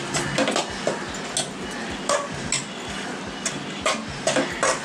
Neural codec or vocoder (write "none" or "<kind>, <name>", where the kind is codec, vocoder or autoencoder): none